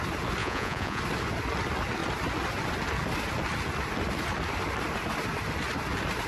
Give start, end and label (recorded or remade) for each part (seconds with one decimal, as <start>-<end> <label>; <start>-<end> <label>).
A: 0.0-0.4 recorded; 0.4-1.0 remade; 1.0-6.3 recorded